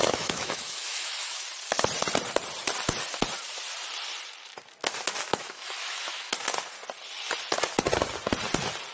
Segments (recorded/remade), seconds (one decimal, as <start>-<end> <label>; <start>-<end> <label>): 0.0-1.4 remade; 1.4-5.3 recorded; 5.3-6.3 remade; 6.3-8.9 recorded